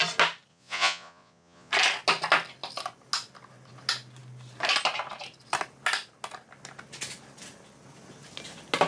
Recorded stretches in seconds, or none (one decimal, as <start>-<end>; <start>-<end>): 0.0-0.5; 1.7-8.9